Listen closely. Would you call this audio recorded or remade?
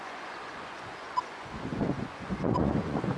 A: remade